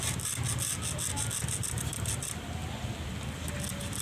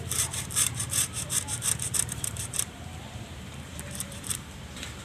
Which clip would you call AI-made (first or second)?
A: second